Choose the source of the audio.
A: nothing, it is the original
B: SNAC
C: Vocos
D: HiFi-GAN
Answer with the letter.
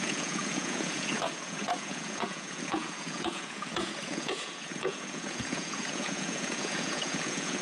C